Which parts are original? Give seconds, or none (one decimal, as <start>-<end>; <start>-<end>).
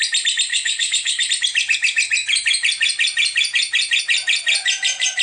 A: 0.0-0.5; 1.3-5.2